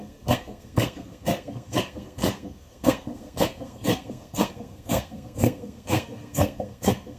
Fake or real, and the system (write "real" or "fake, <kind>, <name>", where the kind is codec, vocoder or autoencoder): fake, codec, SNAC